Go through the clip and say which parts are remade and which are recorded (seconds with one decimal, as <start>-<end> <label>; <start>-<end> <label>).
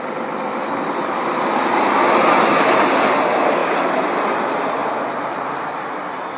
0.0-6.4 recorded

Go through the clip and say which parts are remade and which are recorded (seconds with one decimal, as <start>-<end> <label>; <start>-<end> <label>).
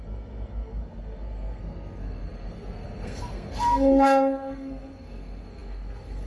0.0-6.3 remade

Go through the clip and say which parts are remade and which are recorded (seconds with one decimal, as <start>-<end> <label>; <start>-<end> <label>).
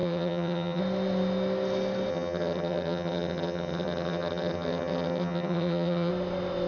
0.0-0.8 remade; 0.8-2.1 recorded; 2.1-6.1 remade; 6.1-6.7 recorded